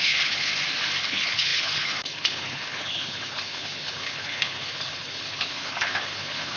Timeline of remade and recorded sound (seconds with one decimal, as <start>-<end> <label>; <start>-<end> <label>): 0.0-0.5 remade; 0.5-1.0 recorded; 1.0-6.6 remade